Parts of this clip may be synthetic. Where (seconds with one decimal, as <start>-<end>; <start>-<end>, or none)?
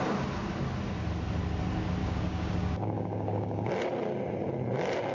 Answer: 2.0-3.7